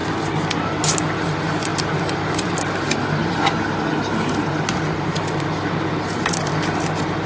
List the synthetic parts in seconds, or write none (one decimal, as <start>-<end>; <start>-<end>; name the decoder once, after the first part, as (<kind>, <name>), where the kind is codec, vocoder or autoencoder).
none

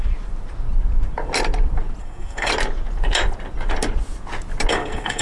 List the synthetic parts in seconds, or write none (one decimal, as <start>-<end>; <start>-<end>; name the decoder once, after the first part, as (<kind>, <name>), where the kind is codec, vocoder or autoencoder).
2.0-2.5 (codec, SNAC); 4.7-5.2

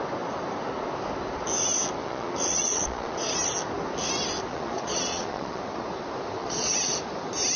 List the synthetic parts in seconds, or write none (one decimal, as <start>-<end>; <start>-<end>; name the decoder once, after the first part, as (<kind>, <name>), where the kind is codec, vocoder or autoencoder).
2.0-3.3 (vocoder, Vocos); 4.5-5.6; 6.4-7.0

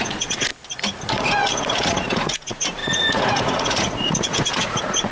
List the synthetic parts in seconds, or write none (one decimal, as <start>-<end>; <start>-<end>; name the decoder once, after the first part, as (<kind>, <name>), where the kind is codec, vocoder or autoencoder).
0.0-0.5 (vocoder, Vocos); 1.1-5.1

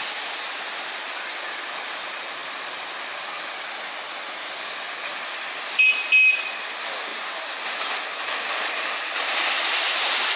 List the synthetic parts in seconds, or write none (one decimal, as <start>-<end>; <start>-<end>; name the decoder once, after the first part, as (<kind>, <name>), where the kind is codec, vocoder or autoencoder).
7.1-8.0 (vocoder, BigVGAN v2)

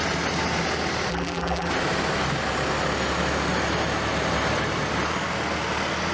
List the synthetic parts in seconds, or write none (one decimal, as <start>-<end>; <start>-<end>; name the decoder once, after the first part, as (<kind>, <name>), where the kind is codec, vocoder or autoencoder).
1.1-1.7 (vocoder, BigVGAN v2)

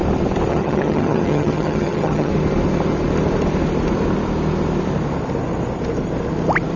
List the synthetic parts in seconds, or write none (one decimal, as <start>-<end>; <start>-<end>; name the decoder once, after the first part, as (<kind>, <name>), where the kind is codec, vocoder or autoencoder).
0.5-2.3 (vocoder, HiFi-GAN)